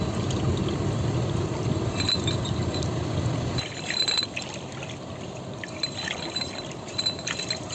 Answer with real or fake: real